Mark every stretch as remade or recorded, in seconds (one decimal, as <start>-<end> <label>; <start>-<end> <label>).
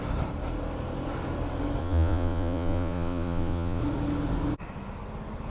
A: 0.0-1.8 recorded; 1.8-3.8 remade; 3.8-5.5 recorded